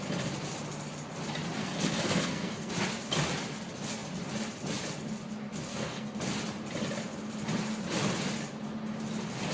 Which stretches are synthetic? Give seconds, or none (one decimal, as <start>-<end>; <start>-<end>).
1.6-2.7; 5.7-6.2